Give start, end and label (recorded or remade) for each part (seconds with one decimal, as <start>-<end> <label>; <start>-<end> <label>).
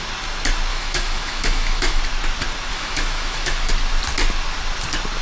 0.0-0.7 recorded; 0.7-2.0 remade; 2.0-2.7 recorded; 2.7-3.7 remade; 3.7-5.2 recorded